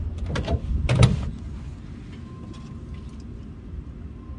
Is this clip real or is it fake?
real